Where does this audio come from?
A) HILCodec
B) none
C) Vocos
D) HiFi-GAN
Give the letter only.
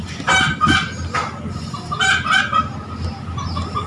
B